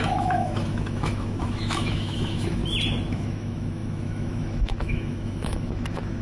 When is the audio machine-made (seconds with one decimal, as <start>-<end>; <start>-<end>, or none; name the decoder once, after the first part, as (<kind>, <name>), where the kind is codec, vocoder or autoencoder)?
0.0-2.6 (autoencoder, DAC-VAE); 3.1-6.2